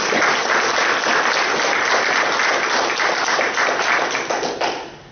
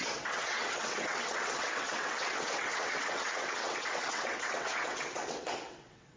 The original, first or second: first